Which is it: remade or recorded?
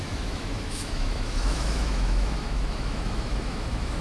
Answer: remade